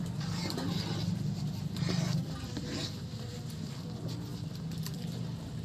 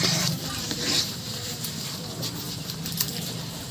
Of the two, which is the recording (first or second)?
first